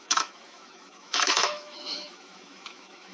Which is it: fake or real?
fake